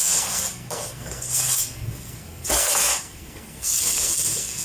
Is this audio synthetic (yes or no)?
yes